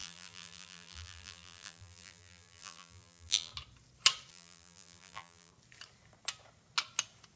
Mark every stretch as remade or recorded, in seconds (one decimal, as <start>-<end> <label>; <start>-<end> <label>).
0.0-3.5 remade; 3.5-4.3 recorded; 4.3-5.5 remade; 5.5-7.4 recorded